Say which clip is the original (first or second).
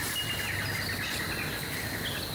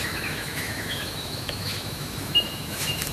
first